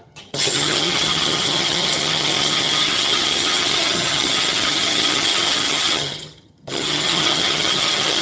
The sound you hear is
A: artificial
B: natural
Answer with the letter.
A